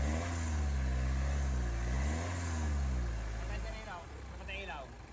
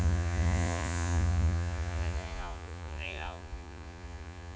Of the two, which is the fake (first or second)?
second